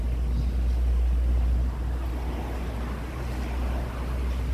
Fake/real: real